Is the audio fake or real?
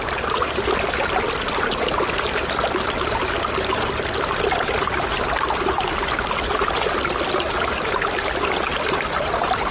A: real